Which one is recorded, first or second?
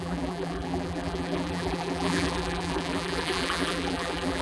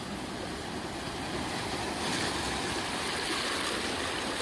second